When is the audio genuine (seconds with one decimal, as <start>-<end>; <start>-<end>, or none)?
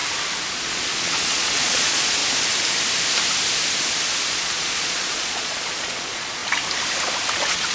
0.0-0.5; 2.2-4.3; 6.4-7.3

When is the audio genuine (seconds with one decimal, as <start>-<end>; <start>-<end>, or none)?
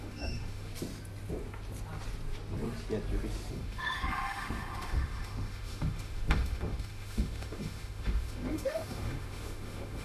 0.7-3.5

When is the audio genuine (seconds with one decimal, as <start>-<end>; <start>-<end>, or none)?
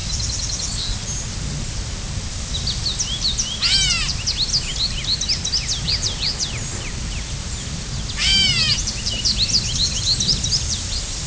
0.0-11.3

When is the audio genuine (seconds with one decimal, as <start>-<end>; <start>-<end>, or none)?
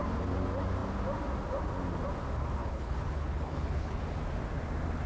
0.0-2.6; 4.0-5.1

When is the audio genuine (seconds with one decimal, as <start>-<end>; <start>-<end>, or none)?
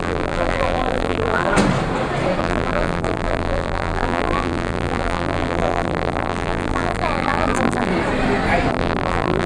1.5-2.4; 7.9-8.7